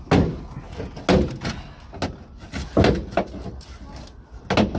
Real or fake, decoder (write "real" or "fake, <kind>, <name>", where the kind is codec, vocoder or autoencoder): real